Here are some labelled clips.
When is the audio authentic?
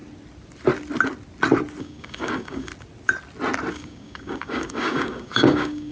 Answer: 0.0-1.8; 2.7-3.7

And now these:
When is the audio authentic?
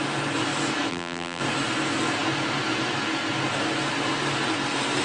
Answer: 0.0-0.9; 1.4-5.0